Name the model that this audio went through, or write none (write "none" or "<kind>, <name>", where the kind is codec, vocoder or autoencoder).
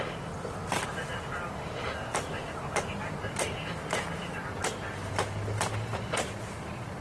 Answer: none